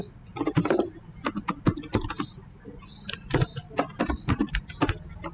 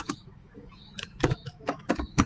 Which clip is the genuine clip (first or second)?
first